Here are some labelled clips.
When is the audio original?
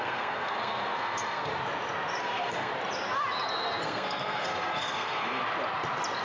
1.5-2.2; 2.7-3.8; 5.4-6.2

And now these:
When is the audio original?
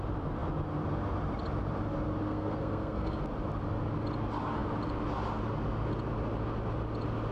0.0-2.2; 3.2-7.3